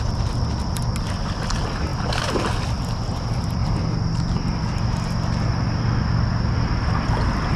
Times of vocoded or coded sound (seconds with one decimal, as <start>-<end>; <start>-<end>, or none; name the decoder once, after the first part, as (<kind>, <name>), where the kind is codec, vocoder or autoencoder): none